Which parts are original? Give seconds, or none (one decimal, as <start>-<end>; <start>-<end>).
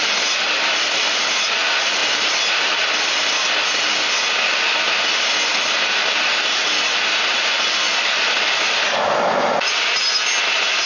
0.0-10.9